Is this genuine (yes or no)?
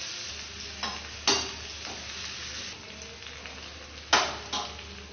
yes